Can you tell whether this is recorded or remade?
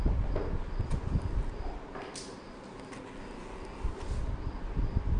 recorded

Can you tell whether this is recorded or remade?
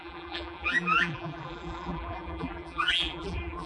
remade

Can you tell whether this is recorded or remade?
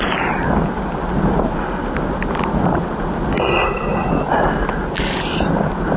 recorded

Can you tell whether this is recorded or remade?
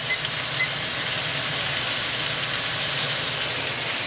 recorded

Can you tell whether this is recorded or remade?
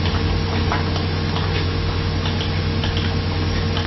recorded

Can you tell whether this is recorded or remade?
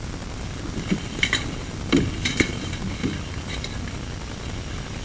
recorded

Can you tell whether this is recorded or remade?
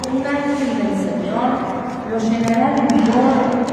recorded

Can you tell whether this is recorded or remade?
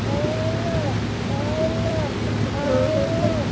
remade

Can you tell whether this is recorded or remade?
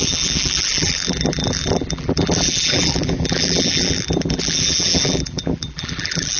remade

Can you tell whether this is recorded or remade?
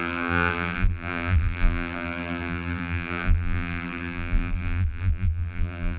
remade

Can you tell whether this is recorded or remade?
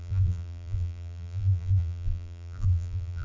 remade